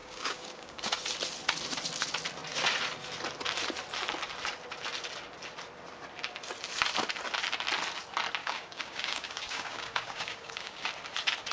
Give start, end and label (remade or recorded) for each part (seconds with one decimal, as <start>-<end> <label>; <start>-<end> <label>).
0.0-0.9 remade; 0.9-8.4 recorded; 8.4-10.9 remade; 10.9-11.5 recorded